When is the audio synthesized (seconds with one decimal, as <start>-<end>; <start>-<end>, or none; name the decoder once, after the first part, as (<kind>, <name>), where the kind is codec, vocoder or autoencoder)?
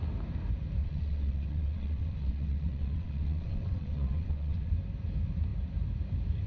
0.8-4.7 (vocoder, WaveNeXt)